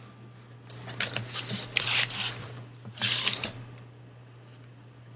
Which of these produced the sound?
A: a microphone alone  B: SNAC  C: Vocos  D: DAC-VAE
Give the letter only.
A